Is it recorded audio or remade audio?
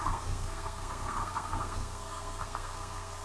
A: remade